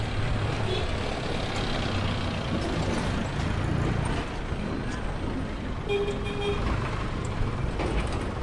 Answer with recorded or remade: recorded